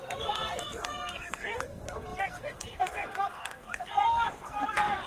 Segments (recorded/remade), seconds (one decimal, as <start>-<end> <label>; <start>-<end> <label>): 0.0-5.1 remade